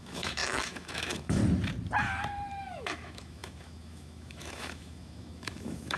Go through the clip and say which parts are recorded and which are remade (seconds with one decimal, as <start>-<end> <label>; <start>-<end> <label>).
0.0-1.4 remade; 1.4-2.7 recorded; 2.7-6.0 remade